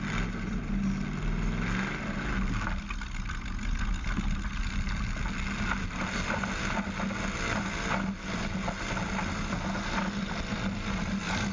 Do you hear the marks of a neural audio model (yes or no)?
no